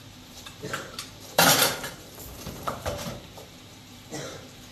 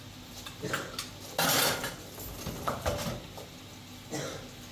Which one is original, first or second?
second